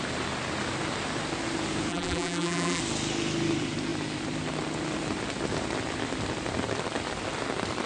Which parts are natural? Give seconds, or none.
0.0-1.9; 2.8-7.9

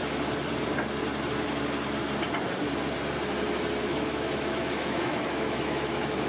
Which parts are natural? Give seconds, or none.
0.0-3.8

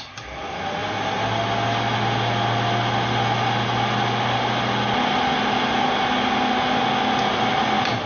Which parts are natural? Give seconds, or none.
0.0-8.1

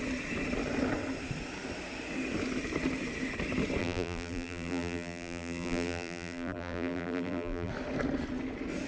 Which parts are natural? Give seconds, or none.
0.0-3.8; 7.7-8.9

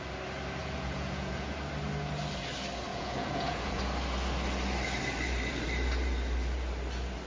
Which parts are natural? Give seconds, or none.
0.0-0.6; 1.5-2.9; 3.8-7.3

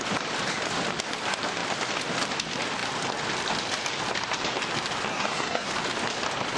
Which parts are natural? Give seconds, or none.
0.0-5.1; 5.7-6.6

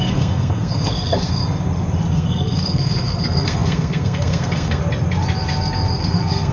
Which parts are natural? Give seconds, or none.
1.4-2.1; 4.8-6.0